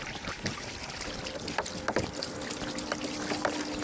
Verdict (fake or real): real